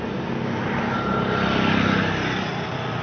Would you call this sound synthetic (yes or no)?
no